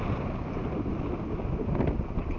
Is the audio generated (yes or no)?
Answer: no